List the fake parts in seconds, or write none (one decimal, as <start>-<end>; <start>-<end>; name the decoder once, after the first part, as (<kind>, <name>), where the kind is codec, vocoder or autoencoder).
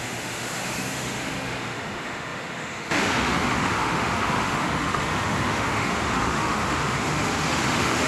0.0-8.1 (autoencoder, DAC-VAE)